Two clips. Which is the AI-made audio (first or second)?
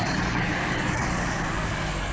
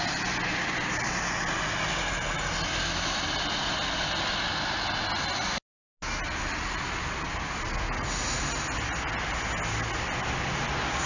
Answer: first